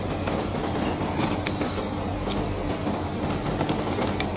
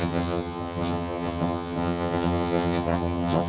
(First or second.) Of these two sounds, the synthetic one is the second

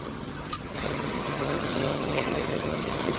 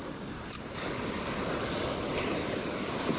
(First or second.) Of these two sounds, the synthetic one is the first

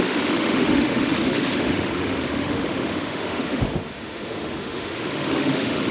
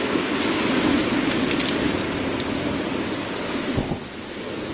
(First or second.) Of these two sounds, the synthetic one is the first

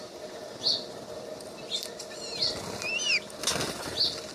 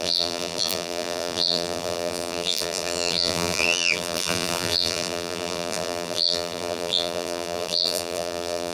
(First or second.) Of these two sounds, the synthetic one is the second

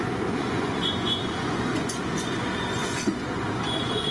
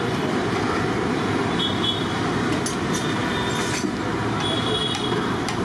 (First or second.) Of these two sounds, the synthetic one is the first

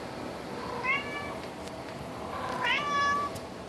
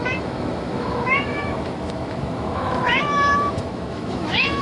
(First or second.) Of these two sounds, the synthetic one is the second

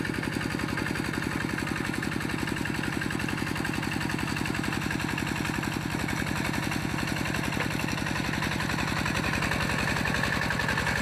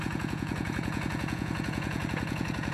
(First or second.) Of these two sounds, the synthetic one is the second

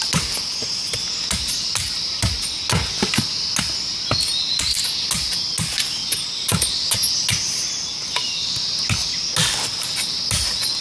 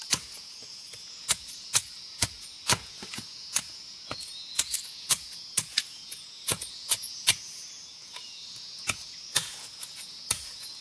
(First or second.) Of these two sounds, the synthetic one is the second